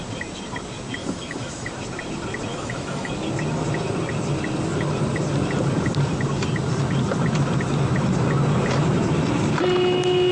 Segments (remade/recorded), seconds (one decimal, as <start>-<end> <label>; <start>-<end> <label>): 0.0-1.0 recorded; 1.0-1.7 remade; 1.7-2.5 recorded; 2.5-3.1 remade; 3.1-10.3 recorded